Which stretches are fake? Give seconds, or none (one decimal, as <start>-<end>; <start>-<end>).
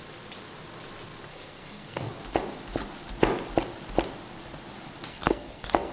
1.3-2.1; 5.1-5.9